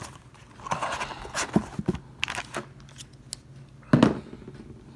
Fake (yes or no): no